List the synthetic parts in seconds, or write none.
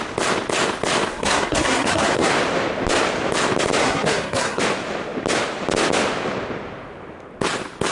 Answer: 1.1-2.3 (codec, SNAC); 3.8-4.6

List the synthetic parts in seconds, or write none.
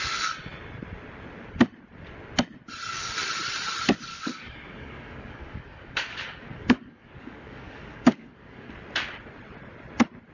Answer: 4.1-8.7 (codec, DAC)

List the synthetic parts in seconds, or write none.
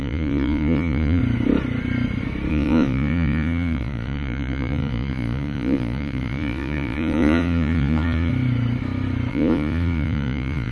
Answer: 0.0-1.2 (vocoder, Vocos); 2.5-8.3; 9.3-10.7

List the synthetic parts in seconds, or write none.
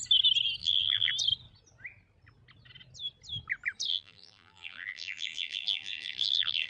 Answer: 0.6-1.1 (vocoder, BigVGAN v2); 3.9-6.7